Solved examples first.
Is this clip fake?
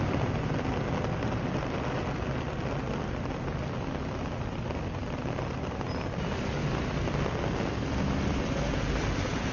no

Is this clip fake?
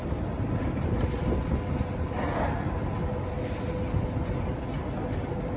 no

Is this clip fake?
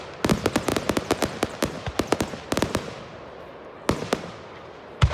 no